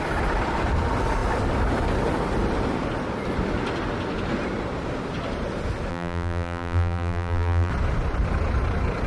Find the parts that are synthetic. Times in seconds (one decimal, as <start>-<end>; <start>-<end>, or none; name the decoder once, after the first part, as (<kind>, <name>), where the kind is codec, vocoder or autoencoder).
5.9-7.7 (vocoder, BigVGAN v2)